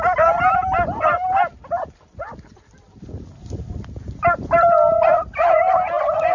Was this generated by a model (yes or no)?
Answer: no